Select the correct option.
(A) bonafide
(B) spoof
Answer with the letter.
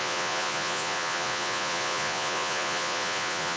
B